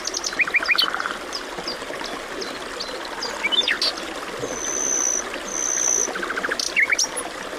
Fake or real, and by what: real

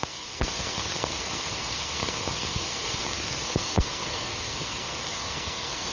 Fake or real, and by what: fake, codec, SNAC